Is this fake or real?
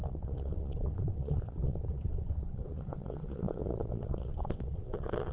fake